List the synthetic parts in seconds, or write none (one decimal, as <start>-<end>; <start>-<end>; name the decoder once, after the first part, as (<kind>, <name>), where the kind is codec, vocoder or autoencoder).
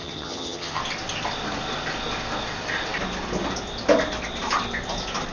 0.0-0.8 (vocoder, HiFi-GAN)